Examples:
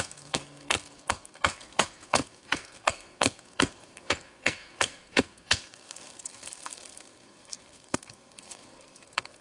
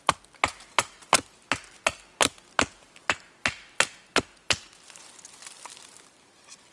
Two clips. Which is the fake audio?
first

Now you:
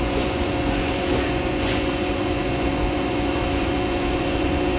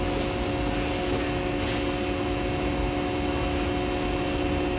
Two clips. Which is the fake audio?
first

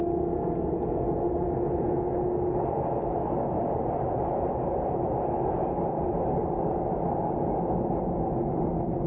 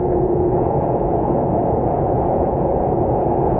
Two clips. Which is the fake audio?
second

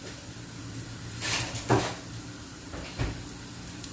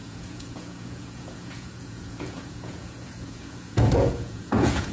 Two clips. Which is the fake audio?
second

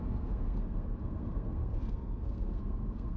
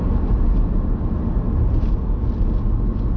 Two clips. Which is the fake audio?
first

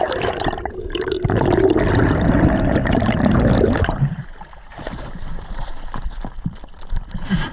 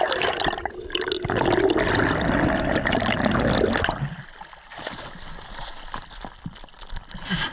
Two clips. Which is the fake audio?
first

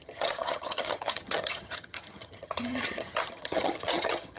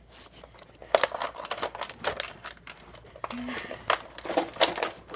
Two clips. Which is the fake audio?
first